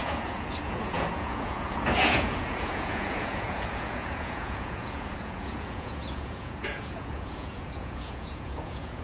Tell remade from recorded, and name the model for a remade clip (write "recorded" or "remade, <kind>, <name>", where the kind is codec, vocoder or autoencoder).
remade, vocoder, Vocos